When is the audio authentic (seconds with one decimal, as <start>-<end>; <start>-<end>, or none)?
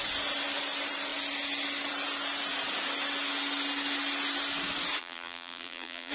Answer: 0.0-5.0